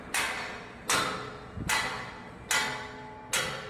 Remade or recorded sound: recorded